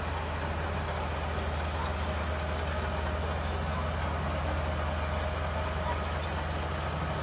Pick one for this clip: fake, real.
real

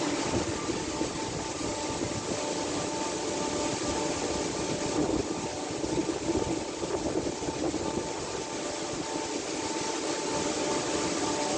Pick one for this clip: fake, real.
real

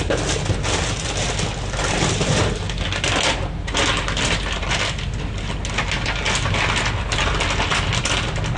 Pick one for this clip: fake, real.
real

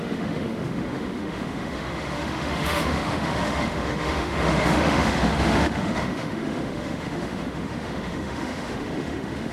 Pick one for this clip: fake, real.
fake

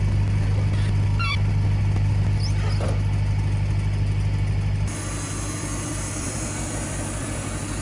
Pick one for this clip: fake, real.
fake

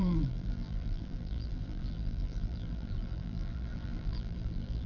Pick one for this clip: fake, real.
fake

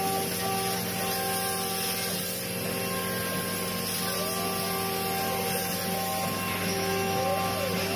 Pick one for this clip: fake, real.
real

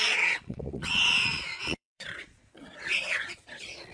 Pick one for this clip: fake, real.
fake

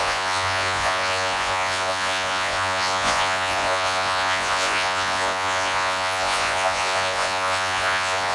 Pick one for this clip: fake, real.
fake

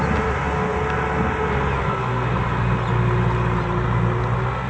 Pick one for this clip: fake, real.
real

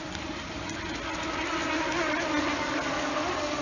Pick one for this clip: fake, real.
real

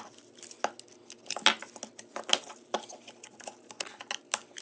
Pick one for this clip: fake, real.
real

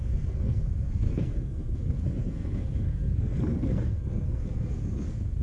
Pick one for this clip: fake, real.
fake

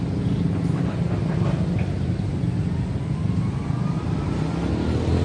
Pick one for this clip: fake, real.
real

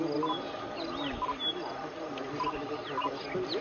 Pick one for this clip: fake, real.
real